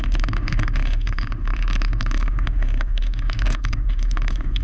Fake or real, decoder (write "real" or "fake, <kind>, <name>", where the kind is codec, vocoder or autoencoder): fake, autoencoder, DAC-VAE